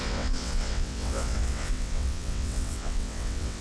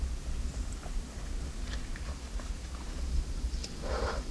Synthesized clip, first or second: first